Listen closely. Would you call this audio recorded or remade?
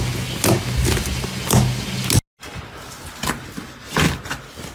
recorded